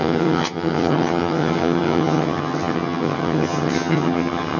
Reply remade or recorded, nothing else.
remade